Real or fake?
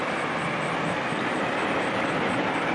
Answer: real